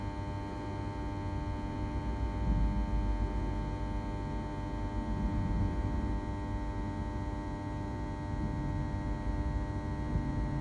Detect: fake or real real